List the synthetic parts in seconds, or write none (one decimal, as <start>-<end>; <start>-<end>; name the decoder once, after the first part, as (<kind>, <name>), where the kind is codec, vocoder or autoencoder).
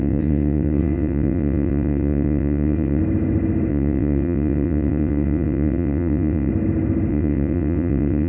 0.0-3.0 (vocoder, WaveNeXt); 3.7-6.5; 7.1-8.3